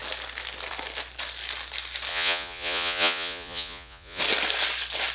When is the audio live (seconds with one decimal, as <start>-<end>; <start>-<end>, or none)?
0.0-2.1; 4.2-5.1